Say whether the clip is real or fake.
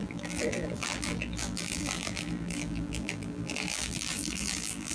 fake